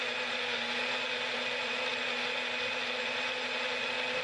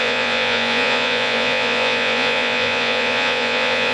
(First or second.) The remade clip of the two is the second